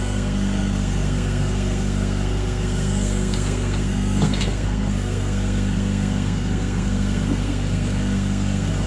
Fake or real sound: fake